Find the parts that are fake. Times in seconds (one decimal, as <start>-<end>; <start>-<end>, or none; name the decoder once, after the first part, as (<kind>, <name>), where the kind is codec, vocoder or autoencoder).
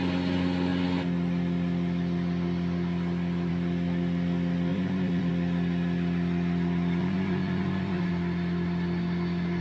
4.7-5.3 (vocoder, Vocos); 7.0-8.1